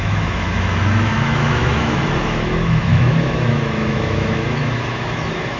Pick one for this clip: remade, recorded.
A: remade